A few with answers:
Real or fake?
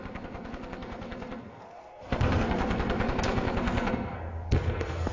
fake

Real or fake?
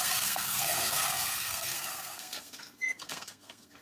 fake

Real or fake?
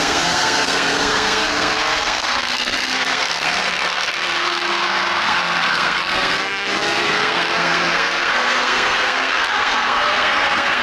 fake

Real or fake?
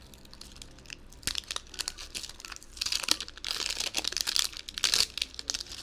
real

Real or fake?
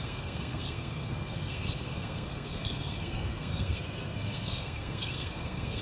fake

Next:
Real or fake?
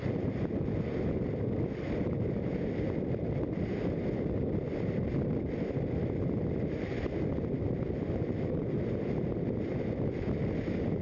real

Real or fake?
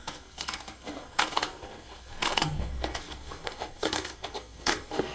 fake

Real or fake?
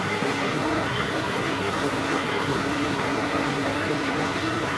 fake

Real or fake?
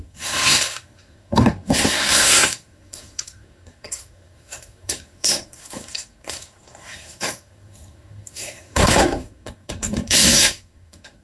fake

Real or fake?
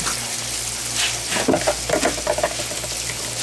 real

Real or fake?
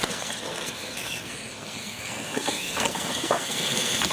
fake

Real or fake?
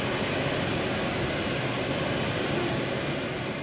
real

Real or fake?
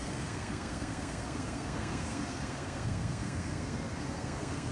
fake